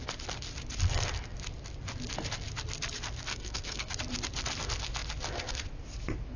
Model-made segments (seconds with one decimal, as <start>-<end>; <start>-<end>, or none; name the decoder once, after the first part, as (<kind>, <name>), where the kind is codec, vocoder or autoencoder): 3.3-3.9 (codec, SNAC)